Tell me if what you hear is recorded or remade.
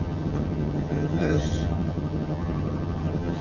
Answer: remade